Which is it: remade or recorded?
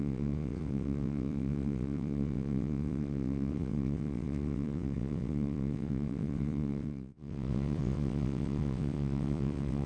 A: remade